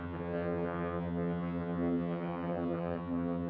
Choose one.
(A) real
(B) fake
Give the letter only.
B